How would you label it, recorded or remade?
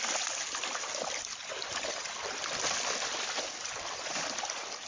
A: remade